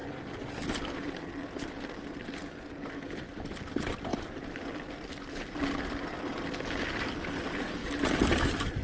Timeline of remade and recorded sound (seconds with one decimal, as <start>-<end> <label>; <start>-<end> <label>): 0.0-0.8 recorded; 0.8-7.8 remade; 7.8-8.8 recorded